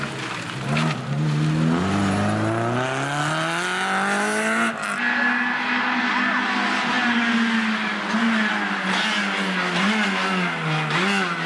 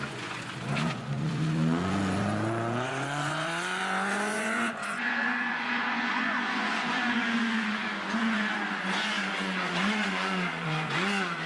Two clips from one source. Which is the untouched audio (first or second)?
first